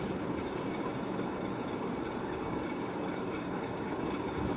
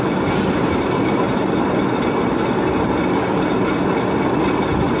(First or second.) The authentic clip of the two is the second